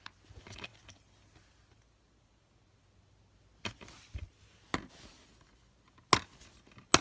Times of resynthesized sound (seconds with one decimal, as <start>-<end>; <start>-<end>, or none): none